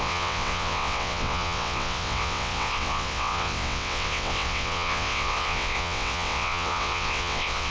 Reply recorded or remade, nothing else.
remade